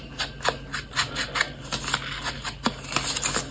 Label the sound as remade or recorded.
recorded